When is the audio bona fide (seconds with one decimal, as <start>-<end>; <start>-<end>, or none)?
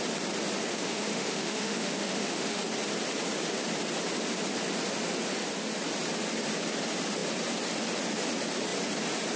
0.0-0.7; 2.6-9.4